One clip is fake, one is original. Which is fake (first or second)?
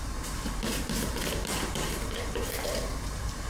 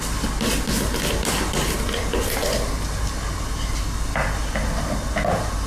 first